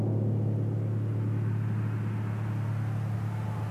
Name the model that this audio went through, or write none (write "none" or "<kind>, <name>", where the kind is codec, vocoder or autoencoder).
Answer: none